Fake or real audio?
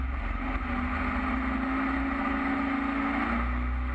real